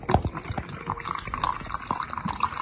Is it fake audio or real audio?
real